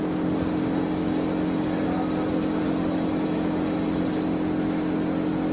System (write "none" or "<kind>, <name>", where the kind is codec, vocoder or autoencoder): none